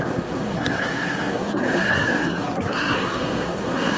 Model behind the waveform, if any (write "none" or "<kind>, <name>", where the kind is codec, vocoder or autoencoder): codec, SNAC